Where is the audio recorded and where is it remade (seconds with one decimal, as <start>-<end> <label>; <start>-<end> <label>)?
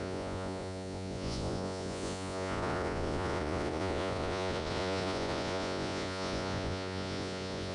0.0-7.7 remade